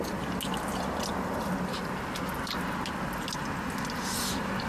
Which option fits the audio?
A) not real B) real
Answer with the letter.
B